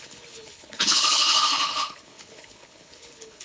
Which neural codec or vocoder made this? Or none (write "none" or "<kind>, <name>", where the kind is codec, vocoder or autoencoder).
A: codec, HILCodec